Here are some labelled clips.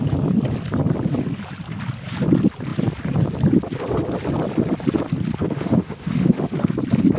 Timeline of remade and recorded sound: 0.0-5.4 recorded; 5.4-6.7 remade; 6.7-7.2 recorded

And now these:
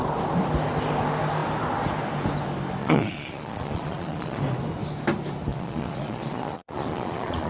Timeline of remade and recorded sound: 0.0-2.8 recorded; 2.8-4.4 remade; 4.4-5.5 recorded; 5.5-7.5 remade

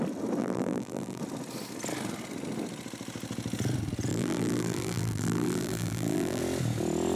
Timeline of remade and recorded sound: 0.0-0.4 recorded; 0.4-1.2 remade; 1.2-4.1 recorded; 4.1-6.4 remade; 6.4-7.2 recorded

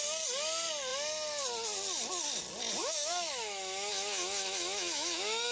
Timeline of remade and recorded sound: 0.0-2.8 recorded; 2.8-5.5 remade

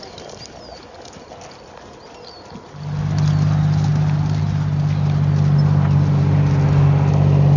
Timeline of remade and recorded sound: 0.0-7.6 recorded

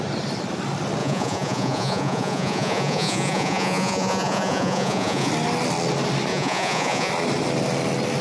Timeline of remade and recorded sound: 0.0-1.0 recorded; 1.0-5.3 remade; 5.3-6.3 recorded; 6.3-7.1 remade; 7.1-8.2 recorded

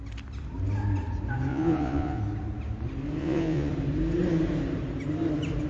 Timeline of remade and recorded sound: 0.0-1.5 recorded; 1.5-2.2 remade; 2.2-3.2 recorded; 3.2-3.7 remade; 3.7-5.7 recorded

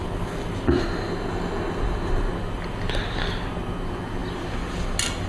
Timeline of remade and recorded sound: 0.0-5.3 recorded